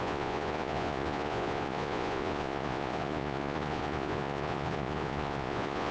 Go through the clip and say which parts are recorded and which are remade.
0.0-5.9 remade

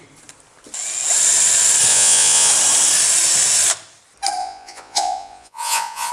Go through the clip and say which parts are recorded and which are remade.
0.0-1.9 recorded; 1.9-2.5 remade; 2.5-4.4 recorded; 4.4-6.1 remade

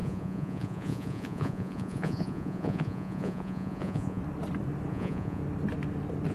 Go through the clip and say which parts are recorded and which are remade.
0.0-4.2 remade; 4.2-4.9 recorded; 4.9-5.4 remade; 5.4-6.3 recorded

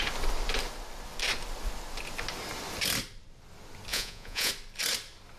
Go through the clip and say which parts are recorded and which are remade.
0.0-3.9 recorded; 3.9-4.5 remade; 4.5-5.4 recorded

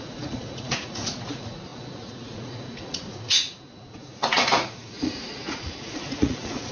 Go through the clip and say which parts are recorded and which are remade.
0.0-6.7 remade

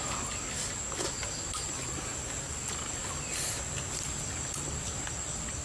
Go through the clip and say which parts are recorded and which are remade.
0.0-5.6 recorded